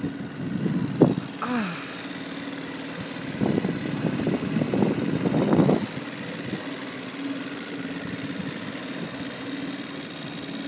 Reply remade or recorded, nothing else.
recorded